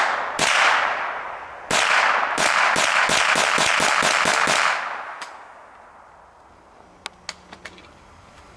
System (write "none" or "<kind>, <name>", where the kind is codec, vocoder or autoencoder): none